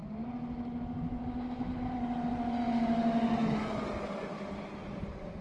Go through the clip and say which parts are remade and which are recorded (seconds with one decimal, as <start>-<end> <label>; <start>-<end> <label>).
0.0-5.4 recorded